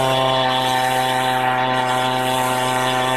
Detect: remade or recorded recorded